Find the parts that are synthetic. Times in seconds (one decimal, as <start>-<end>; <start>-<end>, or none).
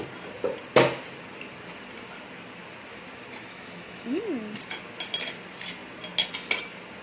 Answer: 3.5-4.2